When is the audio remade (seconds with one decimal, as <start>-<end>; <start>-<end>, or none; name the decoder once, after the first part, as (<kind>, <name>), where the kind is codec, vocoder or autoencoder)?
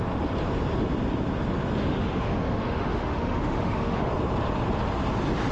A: 1.8-4.1 (autoencoder, DAC-VAE)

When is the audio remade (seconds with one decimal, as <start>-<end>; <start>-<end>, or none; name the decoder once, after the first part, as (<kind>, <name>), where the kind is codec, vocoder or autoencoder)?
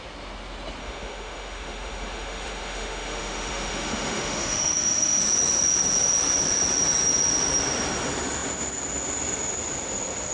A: 0.8-5.2 (autoencoder, DAC-VAE)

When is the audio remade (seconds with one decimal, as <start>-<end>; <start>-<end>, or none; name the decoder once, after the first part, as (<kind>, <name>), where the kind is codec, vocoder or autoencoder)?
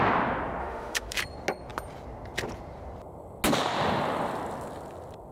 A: 0.6-1.2 (autoencoder, DAC-VAE)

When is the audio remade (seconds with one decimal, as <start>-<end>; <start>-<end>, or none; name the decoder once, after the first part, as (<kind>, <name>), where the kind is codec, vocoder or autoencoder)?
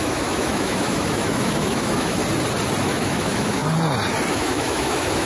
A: 0.0-2.2 (autoencoder, DAC-VAE); 2.8-3.6; 4.3-5.3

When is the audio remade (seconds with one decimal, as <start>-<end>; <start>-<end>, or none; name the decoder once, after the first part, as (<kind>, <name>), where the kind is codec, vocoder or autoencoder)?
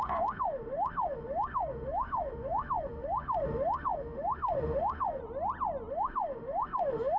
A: 0.0-5.2 (autoencoder, DAC-VAE); 5.9-7.2